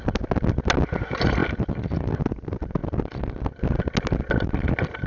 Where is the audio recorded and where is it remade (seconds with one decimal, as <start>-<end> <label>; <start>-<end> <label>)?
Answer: 0.0-5.1 recorded